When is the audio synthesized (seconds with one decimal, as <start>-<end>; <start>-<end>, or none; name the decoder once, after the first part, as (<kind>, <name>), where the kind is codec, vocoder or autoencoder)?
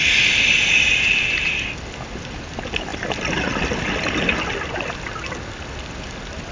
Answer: none